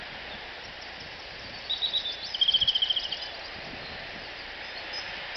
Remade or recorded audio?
recorded